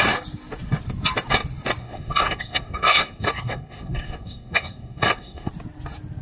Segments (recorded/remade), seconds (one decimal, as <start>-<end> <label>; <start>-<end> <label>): 0.0-1.8 recorded; 1.8-5.5 remade; 5.5-6.2 recorded